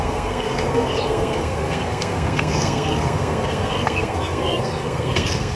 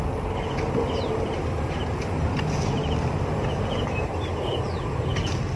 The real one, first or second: second